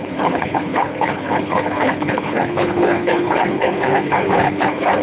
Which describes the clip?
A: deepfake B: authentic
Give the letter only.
A